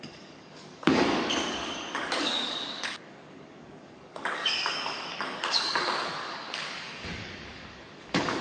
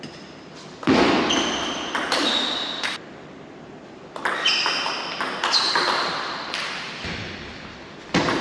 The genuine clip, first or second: second